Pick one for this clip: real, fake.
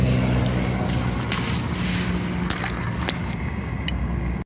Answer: real